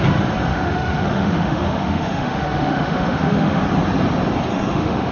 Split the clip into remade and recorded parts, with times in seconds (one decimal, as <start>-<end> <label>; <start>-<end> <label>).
0.0-0.5 recorded; 0.5-3.6 remade; 3.6-4.5 recorded; 4.5-5.1 remade